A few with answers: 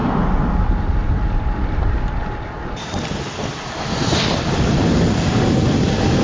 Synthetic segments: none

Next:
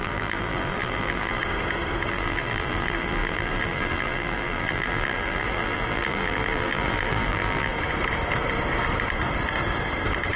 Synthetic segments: 0.0-1.4; 2.1-7.7

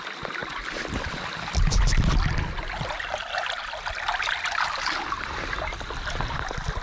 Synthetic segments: none

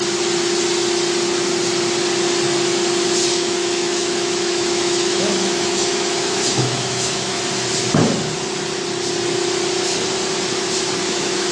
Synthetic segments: 3.3-7.4; 11.0-11.5